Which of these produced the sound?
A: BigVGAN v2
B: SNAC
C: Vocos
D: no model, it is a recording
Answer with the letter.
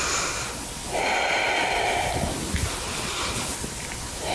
D